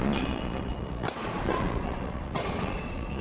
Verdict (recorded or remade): remade